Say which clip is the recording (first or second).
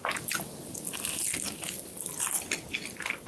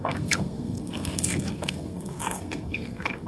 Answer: first